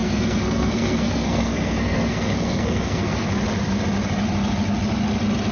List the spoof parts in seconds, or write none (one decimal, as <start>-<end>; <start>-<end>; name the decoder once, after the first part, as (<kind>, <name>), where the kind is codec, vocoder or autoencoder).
0.0-3.3 (codec, SNAC)